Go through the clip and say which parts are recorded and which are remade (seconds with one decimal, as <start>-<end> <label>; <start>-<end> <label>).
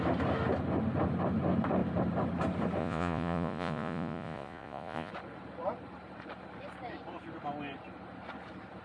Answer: 0.0-2.8 recorded; 2.8-5.1 remade; 5.1-8.8 recorded